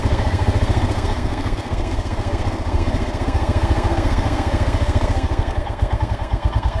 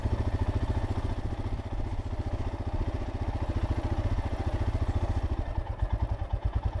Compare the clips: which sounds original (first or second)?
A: second